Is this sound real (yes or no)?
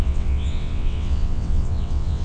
no